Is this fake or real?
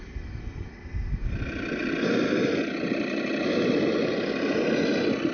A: real